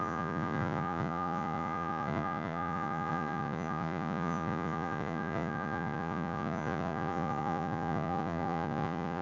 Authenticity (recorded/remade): remade